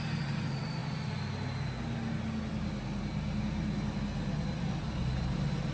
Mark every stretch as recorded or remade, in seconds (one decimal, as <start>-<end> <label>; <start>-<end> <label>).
0.0-5.7 recorded